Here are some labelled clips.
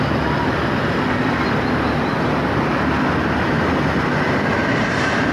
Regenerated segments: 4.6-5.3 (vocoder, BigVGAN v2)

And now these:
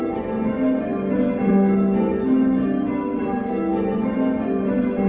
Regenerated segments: none